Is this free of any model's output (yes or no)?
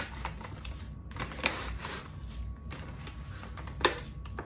yes